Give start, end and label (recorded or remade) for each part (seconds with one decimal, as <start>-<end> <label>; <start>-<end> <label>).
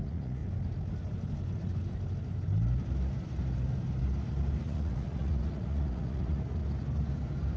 0.0-0.4 remade; 0.4-4.6 recorded; 4.6-6.6 remade; 6.6-7.6 recorded